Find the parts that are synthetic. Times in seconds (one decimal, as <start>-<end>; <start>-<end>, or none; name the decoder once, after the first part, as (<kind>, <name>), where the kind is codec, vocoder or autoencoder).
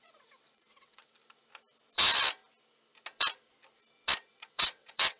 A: 0.0-1.2 (vocoder, WaveNeXt); 4.3-5.2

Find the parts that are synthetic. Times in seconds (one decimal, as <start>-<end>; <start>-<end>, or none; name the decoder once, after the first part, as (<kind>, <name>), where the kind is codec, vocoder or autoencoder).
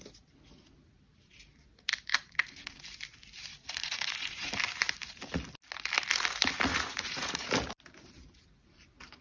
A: 2.1-2.8 (vocoder, Vocos); 3.5-4.5; 6.7-7.5